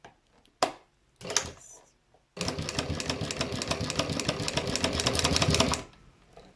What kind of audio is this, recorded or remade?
recorded